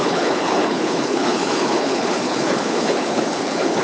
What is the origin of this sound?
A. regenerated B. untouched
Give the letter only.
A